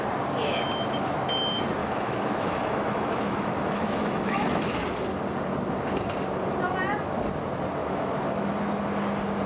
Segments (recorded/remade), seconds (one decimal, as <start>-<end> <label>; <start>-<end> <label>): 0.0-1.8 recorded; 1.8-4.7 remade; 4.7-7.8 recorded; 7.8-8.5 remade; 8.5-9.5 recorded